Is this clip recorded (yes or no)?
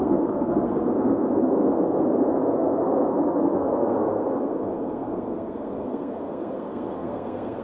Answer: no